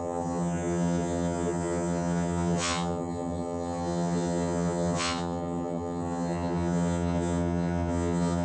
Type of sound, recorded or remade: remade